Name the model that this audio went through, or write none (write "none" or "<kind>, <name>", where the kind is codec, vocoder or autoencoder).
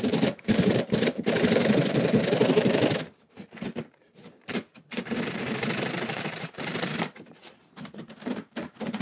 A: vocoder, BigVGAN v2